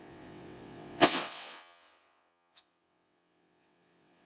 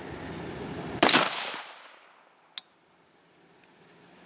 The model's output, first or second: first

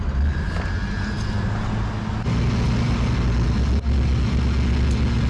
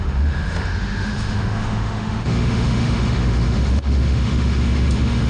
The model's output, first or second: second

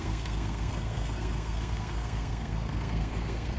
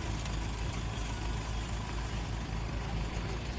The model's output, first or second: first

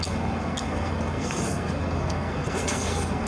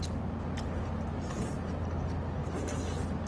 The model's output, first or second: first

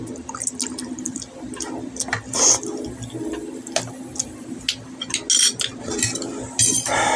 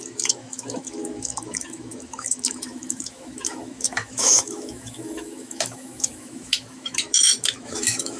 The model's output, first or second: second